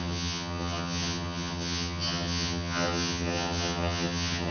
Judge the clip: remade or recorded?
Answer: remade